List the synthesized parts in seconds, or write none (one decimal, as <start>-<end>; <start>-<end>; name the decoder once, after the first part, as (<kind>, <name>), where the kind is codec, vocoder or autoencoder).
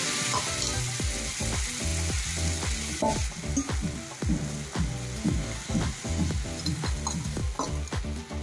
none